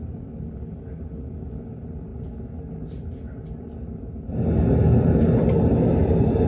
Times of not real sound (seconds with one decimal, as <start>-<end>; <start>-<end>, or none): none